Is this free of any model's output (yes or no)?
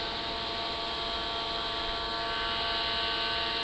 yes